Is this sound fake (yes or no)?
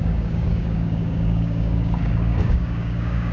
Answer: yes